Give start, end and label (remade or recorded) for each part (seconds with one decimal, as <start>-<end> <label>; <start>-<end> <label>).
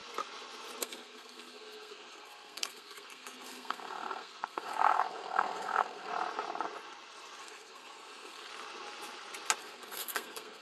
0.0-0.8 recorded; 0.8-6.1 remade; 6.1-7.4 recorded; 7.4-8.5 remade; 8.5-9.6 recorded; 9.6-10.6 remade